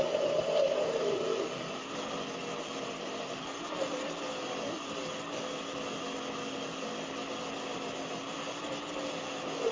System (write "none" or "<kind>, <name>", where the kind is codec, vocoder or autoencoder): none